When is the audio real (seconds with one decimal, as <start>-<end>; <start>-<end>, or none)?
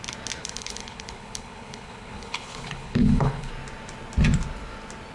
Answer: 0.0-0.4; 3.5-5.1